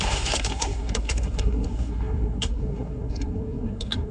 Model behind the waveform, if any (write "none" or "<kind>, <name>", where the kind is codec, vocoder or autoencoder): codec, SNAC